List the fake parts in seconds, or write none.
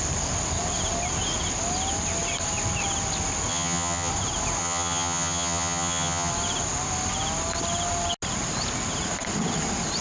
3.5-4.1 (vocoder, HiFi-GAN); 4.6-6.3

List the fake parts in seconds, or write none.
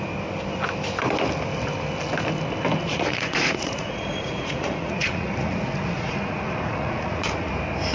2.8-7.5 (vocoder, Vocos)